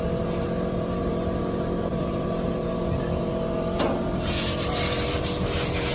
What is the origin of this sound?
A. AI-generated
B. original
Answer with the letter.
A